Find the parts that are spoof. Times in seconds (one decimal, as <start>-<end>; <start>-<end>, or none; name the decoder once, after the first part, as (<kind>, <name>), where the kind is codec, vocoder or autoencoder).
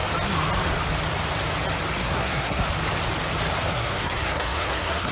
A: 2.0-2.6 (codec, SNAC); 3.7-5.1